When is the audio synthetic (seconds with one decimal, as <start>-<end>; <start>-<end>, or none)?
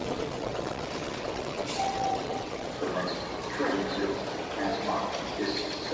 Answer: 0.0-2.7